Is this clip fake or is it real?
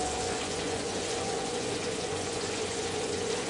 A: fake